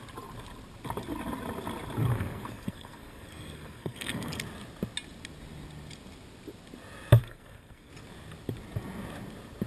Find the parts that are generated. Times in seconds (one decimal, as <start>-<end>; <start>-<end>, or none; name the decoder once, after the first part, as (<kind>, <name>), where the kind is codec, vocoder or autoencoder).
2.1-4.4 (codec, SNAC); 7.2-7.9